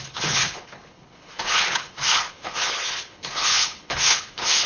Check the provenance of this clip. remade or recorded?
remade